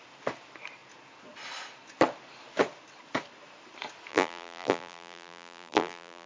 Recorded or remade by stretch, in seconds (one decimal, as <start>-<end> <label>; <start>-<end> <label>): 0.0-4.1 recorded; 4.1-6.3 remade